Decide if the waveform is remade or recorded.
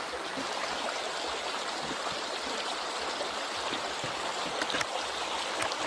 recorded